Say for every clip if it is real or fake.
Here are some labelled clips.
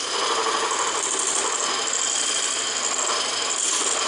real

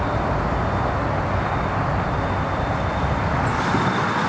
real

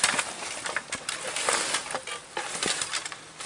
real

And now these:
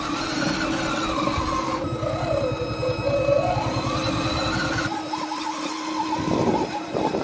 fake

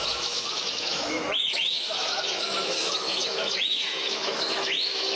fake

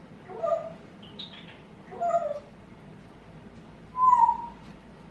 real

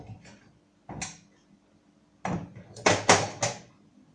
real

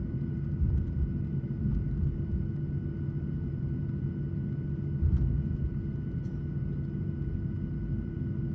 real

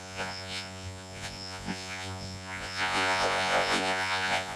fake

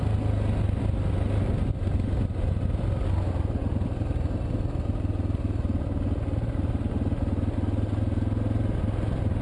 real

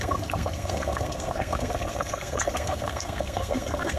fake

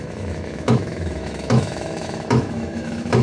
fake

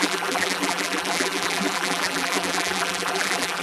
fake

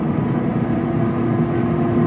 real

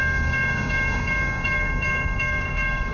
fake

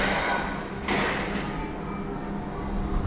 real